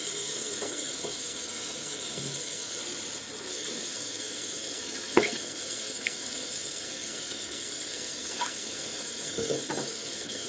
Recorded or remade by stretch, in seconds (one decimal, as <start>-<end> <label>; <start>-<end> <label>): 0.0-2.8 remade; 2.8-3.5 recorded; 3.5-10.5 remade